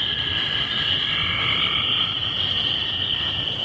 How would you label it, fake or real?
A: real